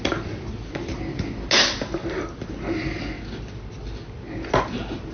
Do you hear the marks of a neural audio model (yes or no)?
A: no